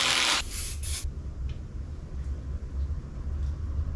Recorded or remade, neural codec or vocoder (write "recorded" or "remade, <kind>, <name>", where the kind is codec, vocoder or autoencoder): recorded